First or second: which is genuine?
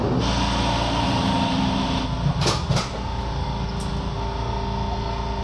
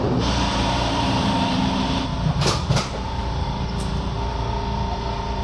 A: first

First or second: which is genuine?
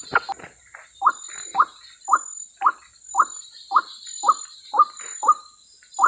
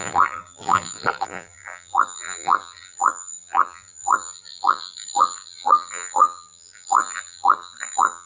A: first